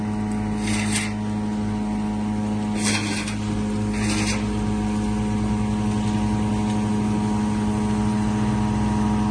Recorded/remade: recorded